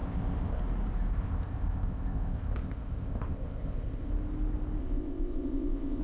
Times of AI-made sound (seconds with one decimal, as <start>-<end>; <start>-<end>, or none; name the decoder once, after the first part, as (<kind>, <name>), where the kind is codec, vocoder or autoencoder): 0.0-0.6 (codec, ZipCodec); 1.1-4.1; 4.8-6.0